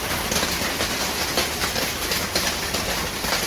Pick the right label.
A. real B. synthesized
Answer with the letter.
A